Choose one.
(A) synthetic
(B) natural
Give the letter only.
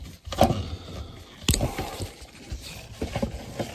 B